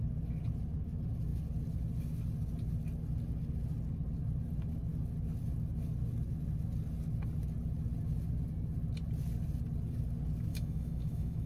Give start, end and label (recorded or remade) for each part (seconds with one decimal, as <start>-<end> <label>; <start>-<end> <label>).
0.0-10.5 recorded; 10.5-11.5 remade